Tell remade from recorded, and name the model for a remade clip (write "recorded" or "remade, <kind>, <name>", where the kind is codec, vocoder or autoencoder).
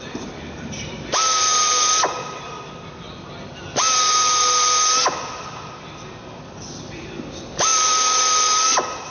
recorded